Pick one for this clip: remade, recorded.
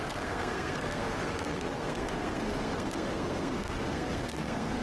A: remade